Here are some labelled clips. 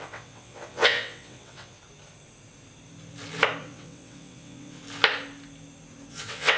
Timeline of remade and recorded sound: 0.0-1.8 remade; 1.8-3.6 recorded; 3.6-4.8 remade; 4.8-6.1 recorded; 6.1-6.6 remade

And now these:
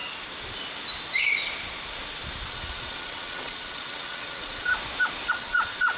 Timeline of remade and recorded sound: 0.0-2.5 recorded; 2.5-4.7 remade; 4.7-5.3 recorded; 5.3-6.0 remade

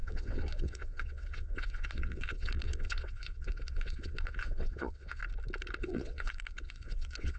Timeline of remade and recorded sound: 0.0-5.2 remade; 5.2-5.8 recorded; 5.8-7.4 remade

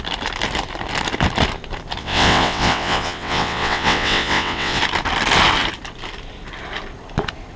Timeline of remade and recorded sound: 0.0-2.0 recorded; 2.0-4.8 remade; 4.8-7.6 recorded

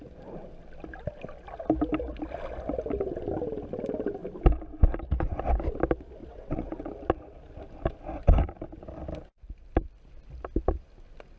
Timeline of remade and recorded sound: 0.0-6.2 recorded; 6.2-6.9 remade; 6.9-11.4 recorded

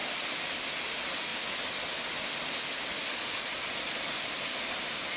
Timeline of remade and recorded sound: 0.0-5.2 recorded

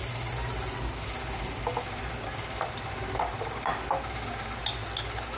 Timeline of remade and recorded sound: 0.0-5.4 recorded

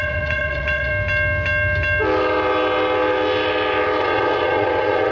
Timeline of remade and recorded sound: 0.0-0.9 remade; 0.9-4.0 recorded; 4.0-5.1 remade